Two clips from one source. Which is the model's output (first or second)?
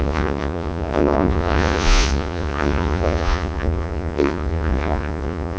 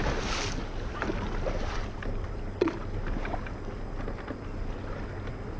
first